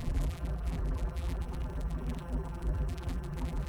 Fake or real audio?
fake